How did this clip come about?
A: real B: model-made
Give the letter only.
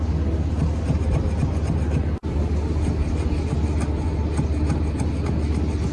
A